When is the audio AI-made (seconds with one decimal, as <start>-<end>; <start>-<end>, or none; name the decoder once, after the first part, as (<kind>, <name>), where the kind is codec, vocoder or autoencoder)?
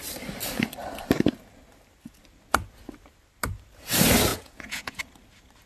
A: 4.3-5.0 (vocoder, Vocos)